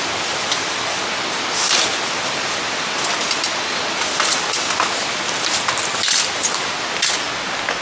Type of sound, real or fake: real